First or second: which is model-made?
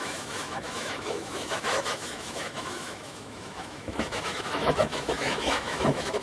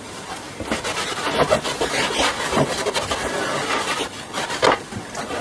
first